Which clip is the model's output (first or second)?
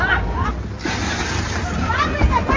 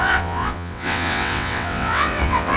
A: second